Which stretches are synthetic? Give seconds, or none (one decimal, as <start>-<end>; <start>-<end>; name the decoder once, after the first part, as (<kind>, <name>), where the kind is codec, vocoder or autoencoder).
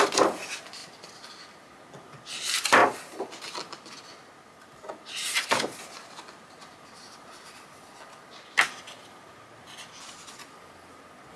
none